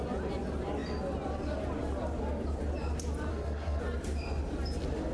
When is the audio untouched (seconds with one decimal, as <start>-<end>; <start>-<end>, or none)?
0.0-3.3; 3.8-5.1